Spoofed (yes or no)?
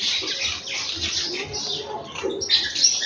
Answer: no